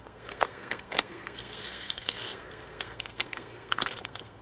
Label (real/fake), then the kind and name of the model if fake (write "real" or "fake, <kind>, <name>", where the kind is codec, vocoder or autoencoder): fake, codec, SNAC